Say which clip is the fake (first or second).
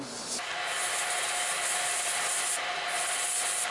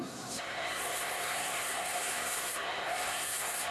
second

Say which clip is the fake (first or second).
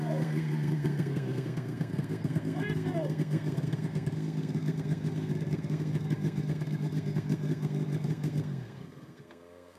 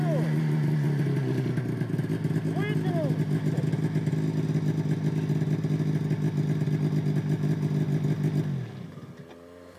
first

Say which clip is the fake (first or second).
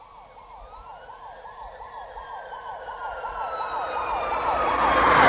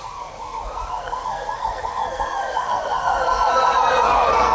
second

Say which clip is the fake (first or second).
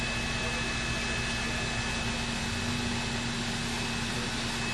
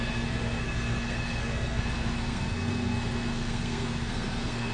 second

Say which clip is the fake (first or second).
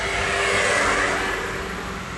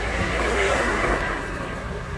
second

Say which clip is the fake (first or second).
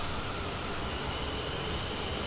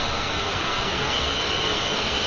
second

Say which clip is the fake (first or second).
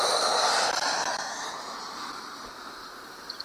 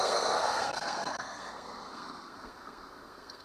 second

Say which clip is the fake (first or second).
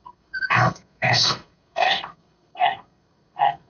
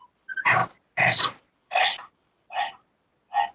first